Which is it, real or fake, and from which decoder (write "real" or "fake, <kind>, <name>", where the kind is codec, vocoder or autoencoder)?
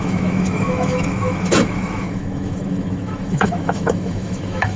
fake, autoencoder, DAC-VAE